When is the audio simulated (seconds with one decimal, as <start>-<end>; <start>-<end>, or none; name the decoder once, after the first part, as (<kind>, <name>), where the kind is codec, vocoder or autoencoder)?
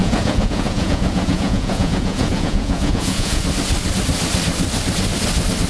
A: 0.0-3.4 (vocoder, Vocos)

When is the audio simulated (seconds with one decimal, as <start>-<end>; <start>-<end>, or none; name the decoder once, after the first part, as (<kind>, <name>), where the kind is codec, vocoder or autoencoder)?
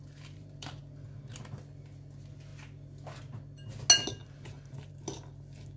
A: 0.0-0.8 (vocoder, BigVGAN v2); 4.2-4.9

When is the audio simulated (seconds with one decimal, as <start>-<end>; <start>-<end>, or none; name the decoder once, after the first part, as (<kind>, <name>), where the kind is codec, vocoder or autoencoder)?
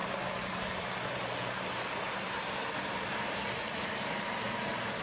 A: none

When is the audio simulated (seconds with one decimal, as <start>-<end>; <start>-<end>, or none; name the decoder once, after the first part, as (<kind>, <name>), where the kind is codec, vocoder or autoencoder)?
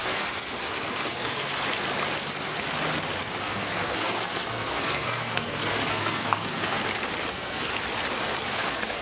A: 0.0-1.5 (codec, SNAC); 3.4-6.8; 7.3-7.7; 8.5-9.0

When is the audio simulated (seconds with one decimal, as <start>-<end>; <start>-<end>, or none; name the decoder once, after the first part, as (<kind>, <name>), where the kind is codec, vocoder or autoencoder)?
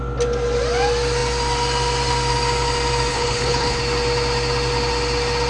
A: 3.1-3.8 (codec, HILCodec)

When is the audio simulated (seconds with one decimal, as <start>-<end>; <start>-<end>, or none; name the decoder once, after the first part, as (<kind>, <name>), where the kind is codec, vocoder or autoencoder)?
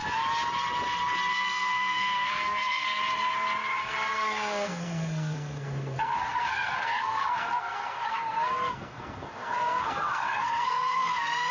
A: 1.3-3.0 (codec, SNAC); 3.8-11.5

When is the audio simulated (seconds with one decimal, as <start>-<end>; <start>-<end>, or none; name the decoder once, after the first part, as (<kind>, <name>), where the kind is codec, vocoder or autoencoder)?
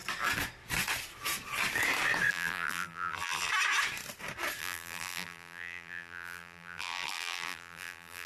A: 2.3-3.5 (vocoder, BigVGAN v2); 4.6-8.3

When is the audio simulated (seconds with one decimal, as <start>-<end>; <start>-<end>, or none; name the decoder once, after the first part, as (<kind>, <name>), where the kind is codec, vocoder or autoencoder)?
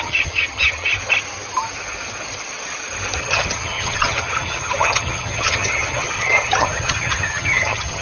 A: 0.0-0.9 (vocoder, HiFi-GAN); 3.2-8.0